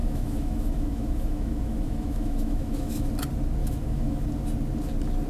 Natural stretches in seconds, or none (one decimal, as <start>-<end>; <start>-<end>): 3.1-3.6; 4.3-5.3